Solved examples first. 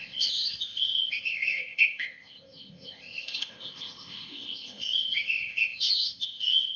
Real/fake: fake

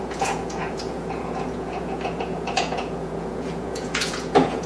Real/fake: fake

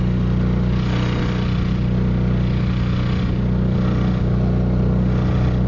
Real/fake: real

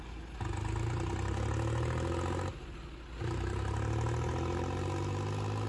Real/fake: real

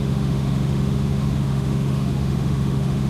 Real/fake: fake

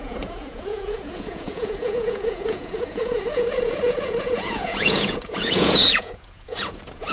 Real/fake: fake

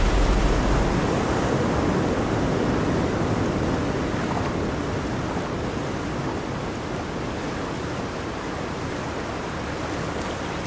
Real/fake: real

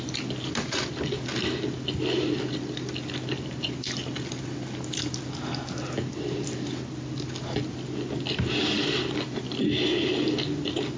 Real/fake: real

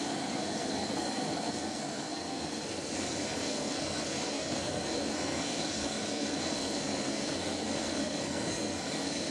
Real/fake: fake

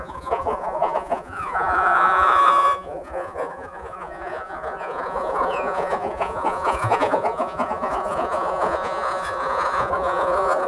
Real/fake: fake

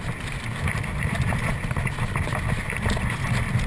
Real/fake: real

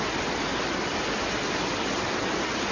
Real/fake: real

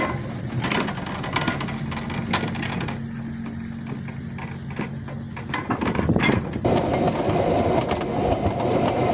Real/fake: real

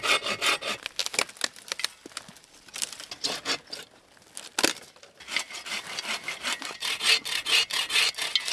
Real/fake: real